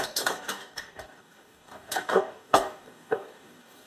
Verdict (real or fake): fake